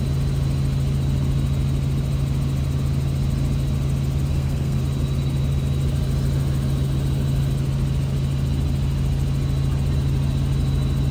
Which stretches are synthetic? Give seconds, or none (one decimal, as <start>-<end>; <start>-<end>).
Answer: 4.3-4.8